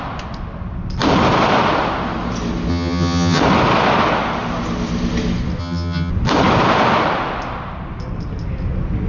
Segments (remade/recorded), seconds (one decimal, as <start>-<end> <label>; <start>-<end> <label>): 0.0-2.7 recorded; 2.7-3.4 remade; 3.4-5.6 recorded; 5.6-6.1 remade; 6.1-9.1 recorded